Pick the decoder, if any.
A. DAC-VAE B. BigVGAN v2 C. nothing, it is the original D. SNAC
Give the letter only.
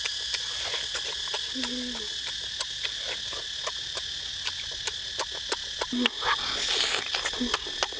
C